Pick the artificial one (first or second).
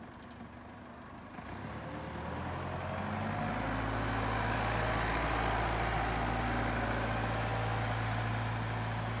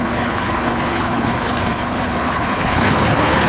second